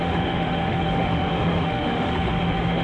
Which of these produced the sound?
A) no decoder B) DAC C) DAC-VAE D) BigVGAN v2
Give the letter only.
C